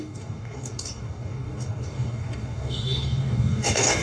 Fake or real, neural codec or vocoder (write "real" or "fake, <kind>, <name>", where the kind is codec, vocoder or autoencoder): fake, codec, DAC